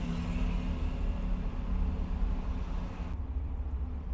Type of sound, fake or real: real